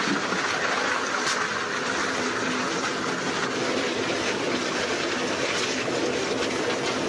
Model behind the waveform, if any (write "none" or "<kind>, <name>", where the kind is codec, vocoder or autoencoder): none